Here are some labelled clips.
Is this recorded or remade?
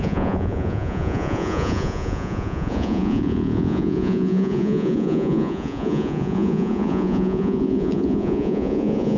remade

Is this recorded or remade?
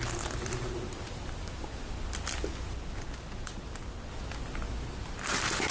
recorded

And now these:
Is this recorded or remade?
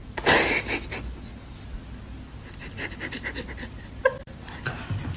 recorded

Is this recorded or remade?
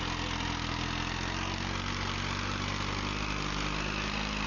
recorded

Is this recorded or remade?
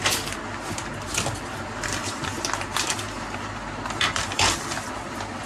recorded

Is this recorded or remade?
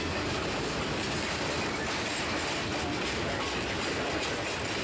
recorded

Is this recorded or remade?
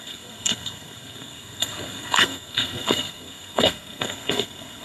remade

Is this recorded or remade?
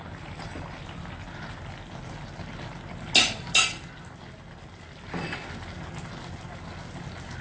recorded